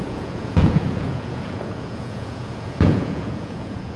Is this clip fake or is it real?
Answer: fake